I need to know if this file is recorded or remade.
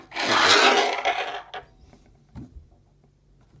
recorded